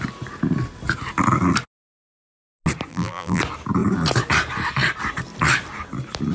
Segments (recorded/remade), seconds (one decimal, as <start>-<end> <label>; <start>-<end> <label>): 0.0-2.9 recorded; 2.9-3.4 remade; 3.4-6.3 recorded